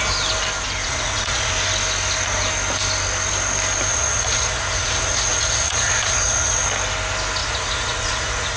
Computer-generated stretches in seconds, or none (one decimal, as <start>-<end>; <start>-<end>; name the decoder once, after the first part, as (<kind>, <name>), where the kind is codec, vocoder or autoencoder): 0.8-1.5 (vocoder, Vocos); 3.9-6.7; 7.4-8.6